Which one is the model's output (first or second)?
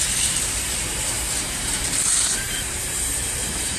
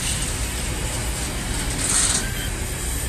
first